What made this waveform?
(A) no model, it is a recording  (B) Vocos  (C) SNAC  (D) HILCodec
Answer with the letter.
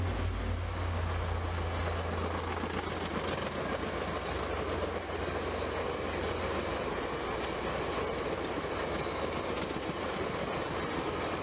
A